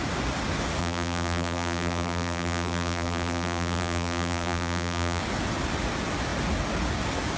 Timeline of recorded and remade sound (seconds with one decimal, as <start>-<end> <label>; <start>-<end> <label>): 0.0-0.8 recorded; 0.8-5.2 remade; 5.2-7.4 recorded